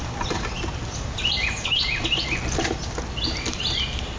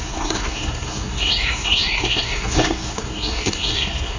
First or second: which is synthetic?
second